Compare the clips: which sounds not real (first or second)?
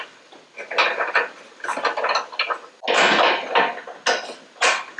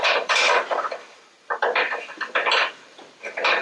second